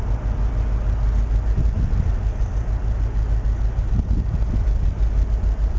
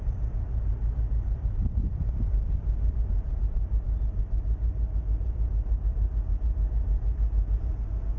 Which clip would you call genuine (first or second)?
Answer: first